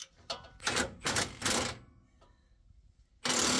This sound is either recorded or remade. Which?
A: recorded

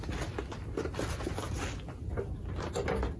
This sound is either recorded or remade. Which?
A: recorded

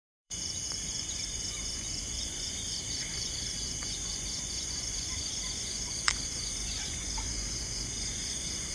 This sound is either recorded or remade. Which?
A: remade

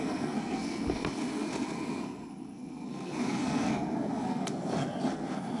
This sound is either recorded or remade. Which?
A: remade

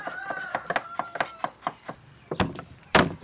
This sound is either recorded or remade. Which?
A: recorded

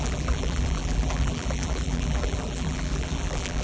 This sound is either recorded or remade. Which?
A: remade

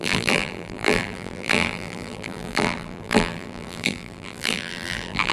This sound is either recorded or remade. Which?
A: remade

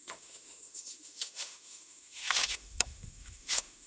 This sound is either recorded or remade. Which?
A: remade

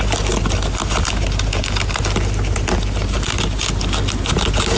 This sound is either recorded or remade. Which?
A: recorded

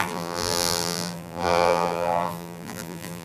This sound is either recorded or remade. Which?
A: remade